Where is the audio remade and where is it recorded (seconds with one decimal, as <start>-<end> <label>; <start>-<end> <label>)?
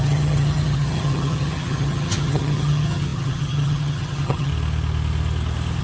0.0-4.5 remade; 4.5-5.8 recorded